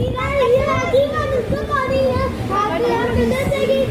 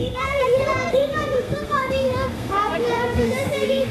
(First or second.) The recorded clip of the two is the first